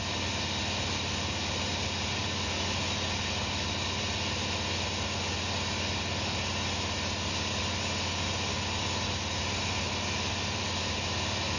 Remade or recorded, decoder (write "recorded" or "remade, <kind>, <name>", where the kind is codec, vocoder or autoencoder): recorded